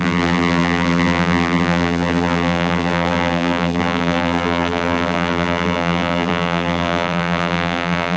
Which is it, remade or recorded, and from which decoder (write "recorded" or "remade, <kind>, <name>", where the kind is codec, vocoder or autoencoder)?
remade, vocoder, BigVGAN v2